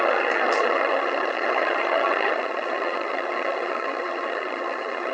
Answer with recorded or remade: remade